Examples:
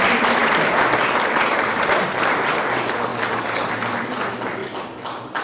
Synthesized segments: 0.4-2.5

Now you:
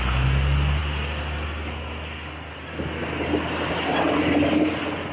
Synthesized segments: none

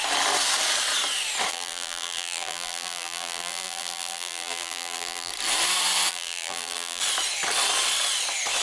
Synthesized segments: 1.5-5.3; 6.1-7.0

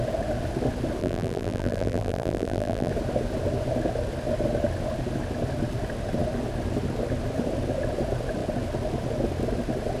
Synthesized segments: 1.0-2.9

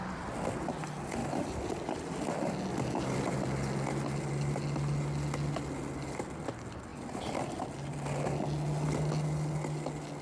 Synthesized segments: 1.2-2.1

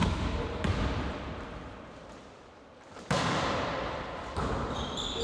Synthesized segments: 0.0-5.2

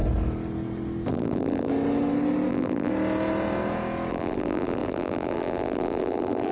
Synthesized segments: 1.1-1.7; 2.5-2.9; 4.1-6.5

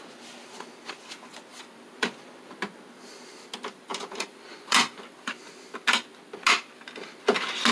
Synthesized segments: 1.5-2.2; 3.9-5.3